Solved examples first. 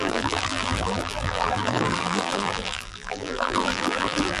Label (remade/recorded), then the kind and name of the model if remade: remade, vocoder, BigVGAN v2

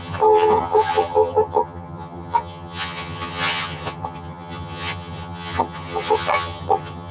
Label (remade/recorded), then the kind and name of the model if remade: remade, vocoder, HiFi-GAN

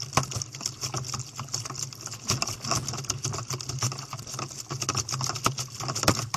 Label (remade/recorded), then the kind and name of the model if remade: recorded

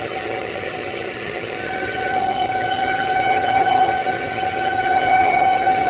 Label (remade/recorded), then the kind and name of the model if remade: remade, vocoder, HiFi-GAN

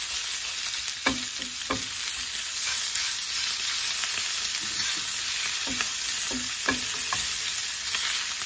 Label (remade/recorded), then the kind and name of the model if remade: recorded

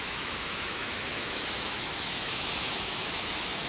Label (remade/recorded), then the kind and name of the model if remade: remade, autoencoder, DAC-VAE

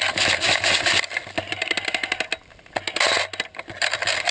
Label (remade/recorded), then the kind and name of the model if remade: recorded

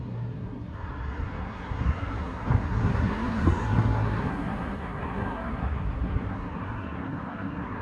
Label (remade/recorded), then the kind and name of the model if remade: remade, codec, SNAC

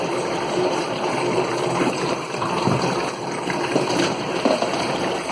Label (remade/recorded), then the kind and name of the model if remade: remade, vocoder, BigVGAN v2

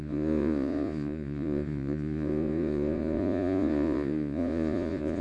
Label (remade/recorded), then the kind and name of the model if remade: remade, vocoder, Vocos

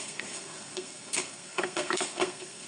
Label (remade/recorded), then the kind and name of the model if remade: remade, codec, SNAC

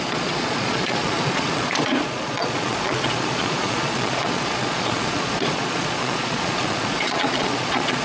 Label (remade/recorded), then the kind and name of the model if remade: remade, vocoder, Vocos